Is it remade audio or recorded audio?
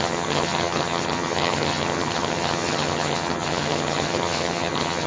remade